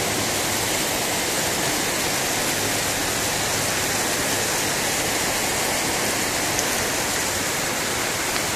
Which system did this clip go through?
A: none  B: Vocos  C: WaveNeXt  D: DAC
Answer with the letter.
A